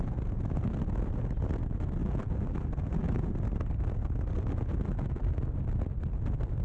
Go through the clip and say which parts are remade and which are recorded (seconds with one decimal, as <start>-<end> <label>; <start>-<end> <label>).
0.0-2.0 recorded; 2.0-3.3 remade; 3.3-4.7 recorded; 4.7-5.4 remade; 5.4-6.6 recorded